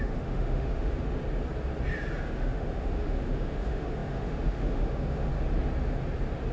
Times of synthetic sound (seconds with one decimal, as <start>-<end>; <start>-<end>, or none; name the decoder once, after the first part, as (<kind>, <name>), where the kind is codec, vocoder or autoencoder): 0.0-1.2 (autoencoder, DAC-VAE); 2.2-5.3